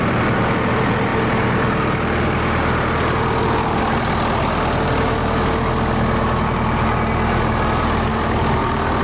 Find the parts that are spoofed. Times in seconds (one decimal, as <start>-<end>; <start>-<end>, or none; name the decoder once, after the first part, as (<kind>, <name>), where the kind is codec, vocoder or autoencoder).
8.1-9.0 (codec, DAC)